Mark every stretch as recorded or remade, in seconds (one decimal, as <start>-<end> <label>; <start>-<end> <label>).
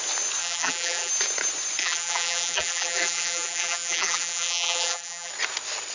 0.0-0.4 recorded; 0.4-1.1 remade; 1.1-1.8 recorded; 1.8-5.3 remade; 5.3-5.9 recorded